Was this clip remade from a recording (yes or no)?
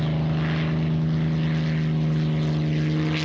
no